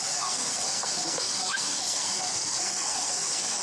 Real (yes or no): no